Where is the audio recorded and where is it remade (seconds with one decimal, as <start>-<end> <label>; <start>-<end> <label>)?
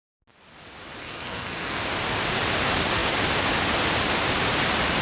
0.0-1.0 recorded; 1.0-1.8 remade; 1.8-5.0 recorded